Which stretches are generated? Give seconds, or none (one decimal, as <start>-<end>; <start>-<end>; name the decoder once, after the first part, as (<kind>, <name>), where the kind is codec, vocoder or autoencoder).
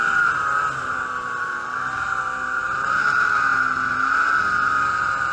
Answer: none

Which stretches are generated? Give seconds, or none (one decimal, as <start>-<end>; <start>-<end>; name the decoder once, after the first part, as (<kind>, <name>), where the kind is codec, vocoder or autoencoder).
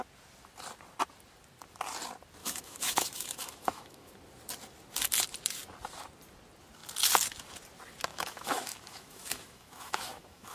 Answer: 2.4-4.1 (autoencoder, DAC-VAE); 8.1-10.5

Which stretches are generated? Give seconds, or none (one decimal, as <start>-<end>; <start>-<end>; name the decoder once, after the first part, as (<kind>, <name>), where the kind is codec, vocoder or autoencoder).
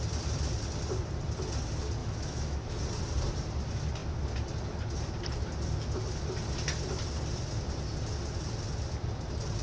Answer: 2.0-2.8 (autoencoder, DAC-VAE)